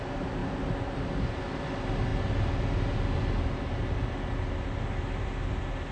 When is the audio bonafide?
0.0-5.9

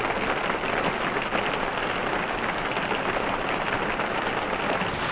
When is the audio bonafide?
0.0-5.1

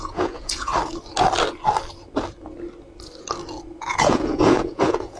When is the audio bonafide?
0.7-3.8

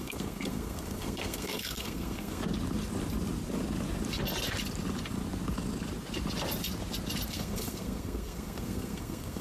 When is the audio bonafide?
2.4-7.3

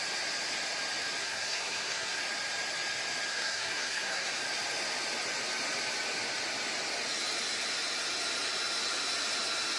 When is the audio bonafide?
0.0-1.2; 2.2-3.3; 4.4-9.8

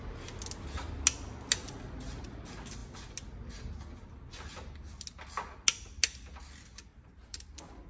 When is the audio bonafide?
0.0-6.9; 7.4-7.9